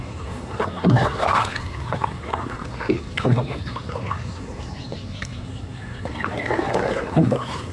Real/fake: fake